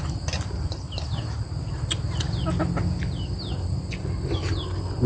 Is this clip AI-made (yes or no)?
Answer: no